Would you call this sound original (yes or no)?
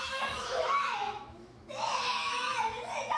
no